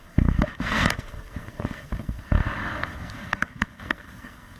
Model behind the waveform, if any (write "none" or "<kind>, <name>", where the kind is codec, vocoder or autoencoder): codec, SNAC